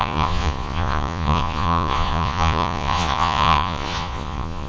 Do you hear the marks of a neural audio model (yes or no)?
yes